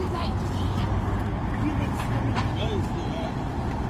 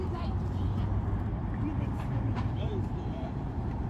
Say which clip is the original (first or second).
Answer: first